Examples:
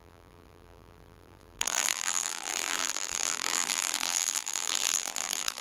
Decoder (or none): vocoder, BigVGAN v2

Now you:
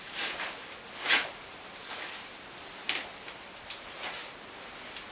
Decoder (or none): none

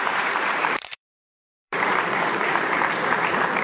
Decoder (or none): vocoder, BigVGAN v2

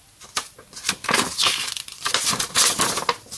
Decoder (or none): none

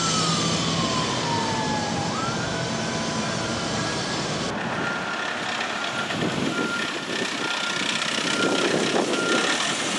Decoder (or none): none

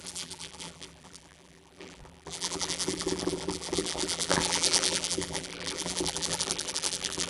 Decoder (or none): vocoder, BigVGAN v2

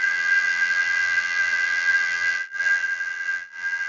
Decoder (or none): vocoder, BigVGAN v2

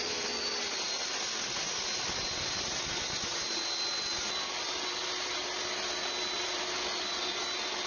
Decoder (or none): none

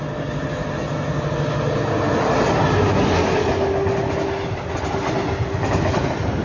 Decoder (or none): none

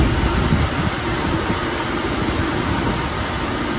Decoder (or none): none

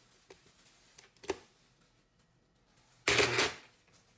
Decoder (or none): none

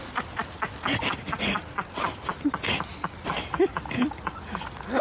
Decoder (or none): none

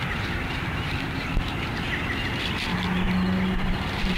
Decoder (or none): vocoder, BigVGAN v2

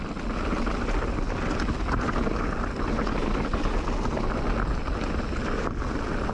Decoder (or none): none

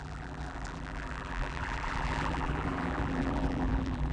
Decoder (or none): vocoder, BigVGAN v2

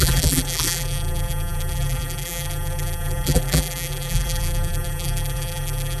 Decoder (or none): vocoder, BigVGAN v2